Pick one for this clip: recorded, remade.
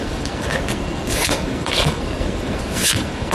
remade